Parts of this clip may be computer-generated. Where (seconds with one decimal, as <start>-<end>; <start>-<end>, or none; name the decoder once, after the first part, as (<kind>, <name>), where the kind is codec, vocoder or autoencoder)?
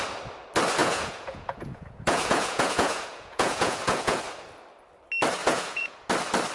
0.8-4.2 (vocoder, Vocos); 5.4-6.1